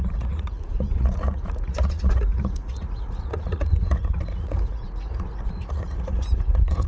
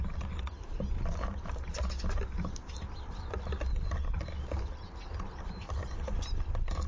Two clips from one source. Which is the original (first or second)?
second